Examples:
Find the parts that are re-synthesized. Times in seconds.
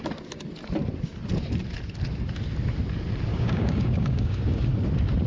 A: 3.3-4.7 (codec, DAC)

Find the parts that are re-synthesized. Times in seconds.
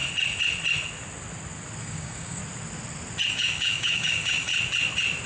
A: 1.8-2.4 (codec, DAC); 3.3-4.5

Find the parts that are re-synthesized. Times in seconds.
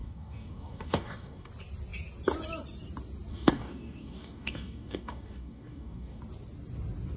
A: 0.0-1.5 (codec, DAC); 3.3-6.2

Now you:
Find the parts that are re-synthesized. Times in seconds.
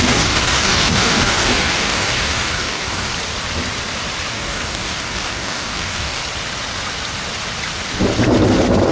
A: 0.0-3.1 (codec, DAC); 4.3-6.2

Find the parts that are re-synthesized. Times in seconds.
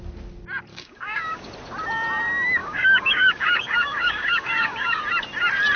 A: 0.7-1.5 (codec, DAC); 2.6-5.0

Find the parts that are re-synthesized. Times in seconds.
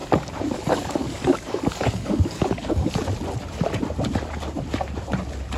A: 0.0-2.9 (codec, DAC)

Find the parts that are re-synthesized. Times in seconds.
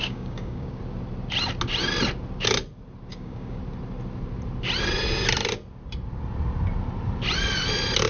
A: 0.0-0.8 (codec, DAC); 3.1-3.6